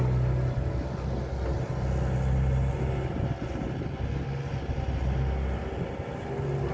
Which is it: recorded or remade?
recorded